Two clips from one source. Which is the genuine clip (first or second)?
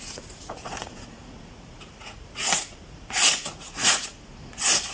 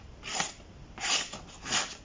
second